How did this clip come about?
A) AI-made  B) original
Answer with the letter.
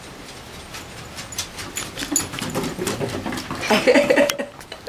B